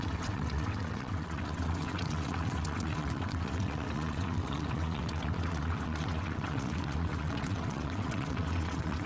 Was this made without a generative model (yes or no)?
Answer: no